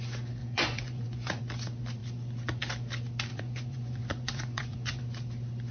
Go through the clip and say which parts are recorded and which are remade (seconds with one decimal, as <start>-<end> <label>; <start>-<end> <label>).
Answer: 0.0-0.4 recorded; 0.4-1.4 remade; 1.4-3.3 recorded; 3.3-5.0 remade; 5.0-5.7 recorded